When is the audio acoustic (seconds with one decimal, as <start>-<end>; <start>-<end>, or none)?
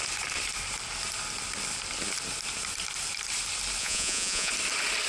0.0-3.8; 4.5-5.1